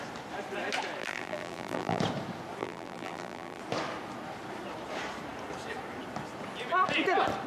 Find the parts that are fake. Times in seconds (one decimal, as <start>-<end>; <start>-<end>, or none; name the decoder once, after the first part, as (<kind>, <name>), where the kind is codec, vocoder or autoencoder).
1.0-2.0 (vocoder, BigVGAN v2); 2.6-3.6